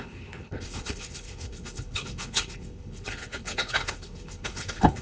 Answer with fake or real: fake